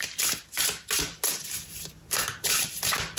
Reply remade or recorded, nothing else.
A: recorded